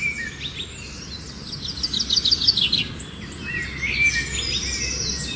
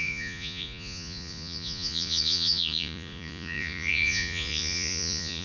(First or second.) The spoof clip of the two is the second